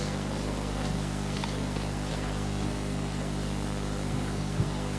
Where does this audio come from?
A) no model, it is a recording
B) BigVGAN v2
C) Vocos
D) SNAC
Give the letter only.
D